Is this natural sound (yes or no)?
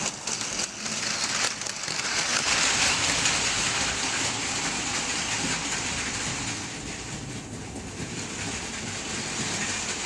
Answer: yes